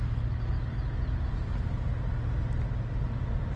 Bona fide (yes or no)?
yes